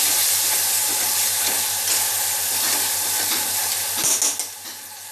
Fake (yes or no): no